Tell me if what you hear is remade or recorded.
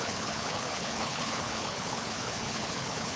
remade